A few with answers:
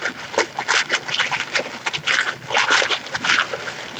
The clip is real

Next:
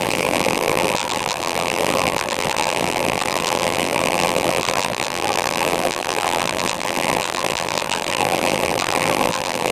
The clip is fake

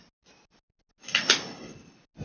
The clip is real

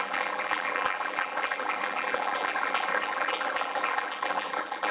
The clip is fake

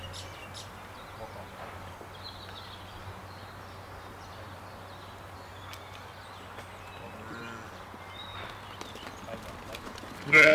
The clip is real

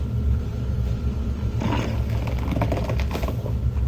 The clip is real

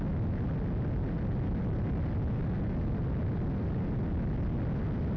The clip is real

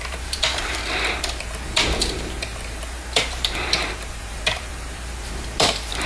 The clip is fake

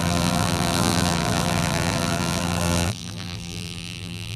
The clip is fake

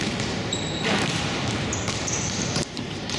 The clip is fake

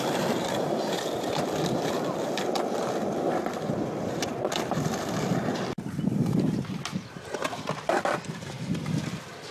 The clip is fake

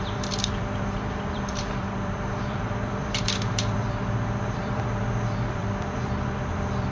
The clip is fake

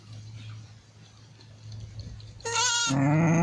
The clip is real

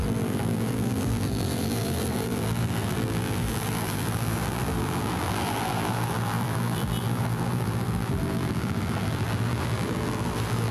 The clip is fake